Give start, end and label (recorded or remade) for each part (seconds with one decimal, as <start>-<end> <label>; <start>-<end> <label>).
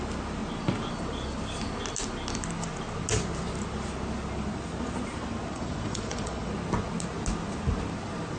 0.0-5.5 recorded; 5.5-6.5 remade; 6.5-8.4 recorded